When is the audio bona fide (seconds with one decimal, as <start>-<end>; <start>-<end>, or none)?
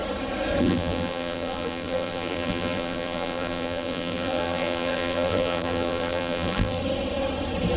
0.0-0.6; 6.8-7.8